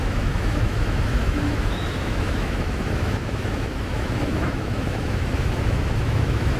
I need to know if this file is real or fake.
fake